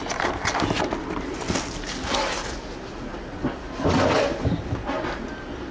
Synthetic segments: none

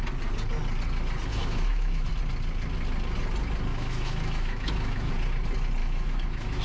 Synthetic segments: 1.3-2.1 (autoencoder, DAC-VAE); 3.7-5.1; 5.8-6.6

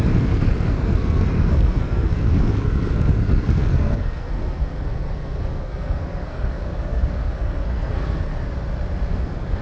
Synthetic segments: 0.0-8.3 (codec, SNAC); 9.1-9.6

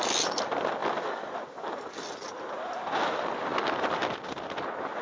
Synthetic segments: none

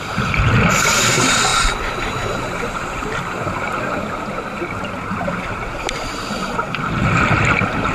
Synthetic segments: none

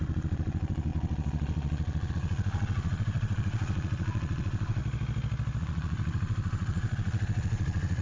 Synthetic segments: 0.0-4.8 (vocoder, Vocos); 5.6-8.0